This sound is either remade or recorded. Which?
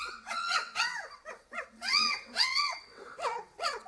remade